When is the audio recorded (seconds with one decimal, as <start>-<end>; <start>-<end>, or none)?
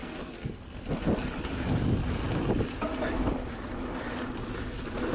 0.9-5.1